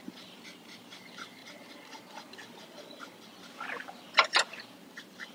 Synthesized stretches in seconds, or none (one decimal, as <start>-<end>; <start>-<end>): 0.0-5.3